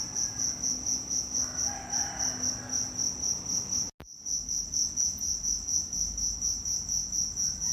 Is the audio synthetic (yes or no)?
no